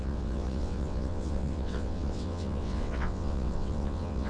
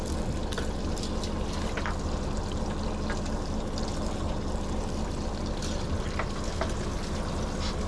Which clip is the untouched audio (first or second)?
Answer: second